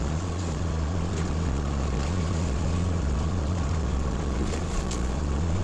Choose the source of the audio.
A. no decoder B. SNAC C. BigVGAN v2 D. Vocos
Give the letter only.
D